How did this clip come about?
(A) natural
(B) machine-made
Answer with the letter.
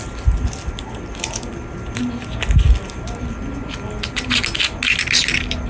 A